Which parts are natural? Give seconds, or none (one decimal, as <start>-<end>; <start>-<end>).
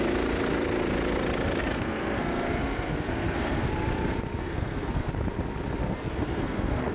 0.0-1.6; 3.7-4.4; 5.1-5.8